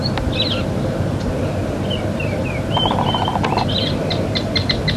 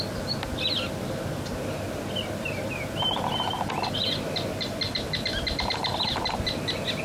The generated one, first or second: first